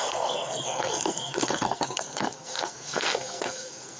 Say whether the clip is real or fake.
fake